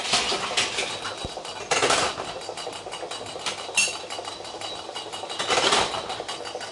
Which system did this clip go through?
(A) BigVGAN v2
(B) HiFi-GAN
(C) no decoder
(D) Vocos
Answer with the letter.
C